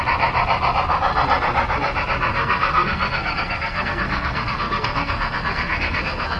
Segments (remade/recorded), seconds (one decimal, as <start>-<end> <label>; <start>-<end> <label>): 0.0-2.3 recorded; 2.3-6.4 remade